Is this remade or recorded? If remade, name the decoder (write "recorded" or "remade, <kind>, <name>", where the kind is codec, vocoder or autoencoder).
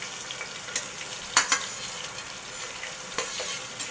recorded